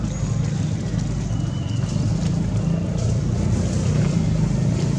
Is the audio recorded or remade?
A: recorded